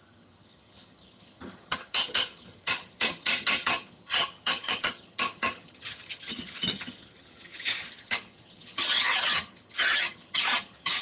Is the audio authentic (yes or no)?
no